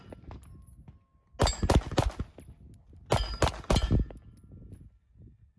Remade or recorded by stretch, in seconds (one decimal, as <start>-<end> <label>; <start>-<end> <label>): 0.0-5.6 recorded